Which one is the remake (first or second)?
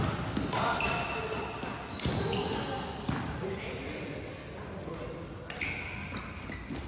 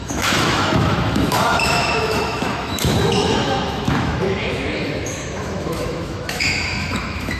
second